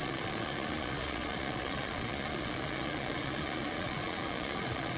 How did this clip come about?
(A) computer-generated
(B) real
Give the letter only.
A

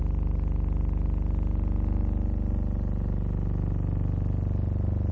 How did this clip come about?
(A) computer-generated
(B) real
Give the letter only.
B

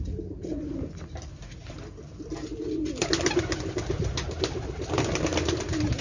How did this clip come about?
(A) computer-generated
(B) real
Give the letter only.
B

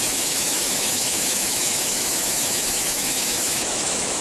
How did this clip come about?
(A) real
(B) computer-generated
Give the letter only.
B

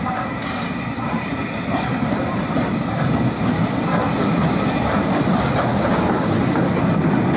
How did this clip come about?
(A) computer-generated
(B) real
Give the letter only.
B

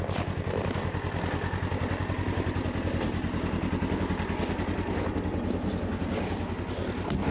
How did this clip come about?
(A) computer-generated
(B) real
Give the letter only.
B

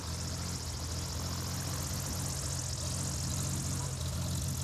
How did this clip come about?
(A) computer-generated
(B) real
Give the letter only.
B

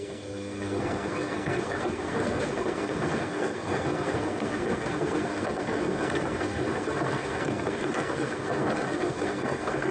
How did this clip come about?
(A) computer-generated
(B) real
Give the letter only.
A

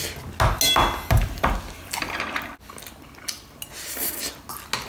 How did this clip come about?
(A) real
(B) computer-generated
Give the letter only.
A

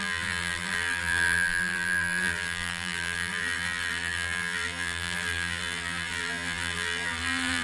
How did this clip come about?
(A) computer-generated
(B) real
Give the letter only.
A